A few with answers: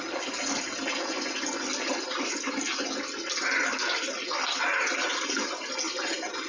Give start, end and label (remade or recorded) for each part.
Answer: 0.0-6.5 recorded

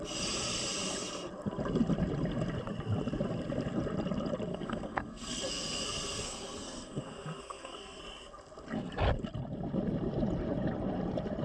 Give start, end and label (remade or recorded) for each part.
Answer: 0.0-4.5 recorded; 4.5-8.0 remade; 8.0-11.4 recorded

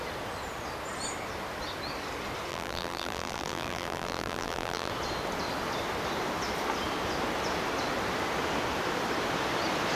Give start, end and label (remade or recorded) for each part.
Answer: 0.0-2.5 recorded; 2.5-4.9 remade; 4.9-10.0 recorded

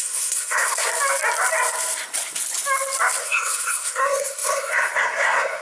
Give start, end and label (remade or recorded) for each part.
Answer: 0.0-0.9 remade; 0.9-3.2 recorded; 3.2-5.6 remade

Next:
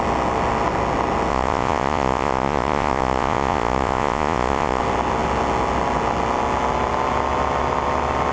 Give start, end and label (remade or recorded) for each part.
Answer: 0.0-1.3 recorded; 1.3-4.8 remade; 4.8-8.3 recorded